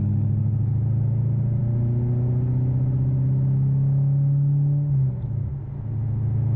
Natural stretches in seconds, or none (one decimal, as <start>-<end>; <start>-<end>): 0.0-6.6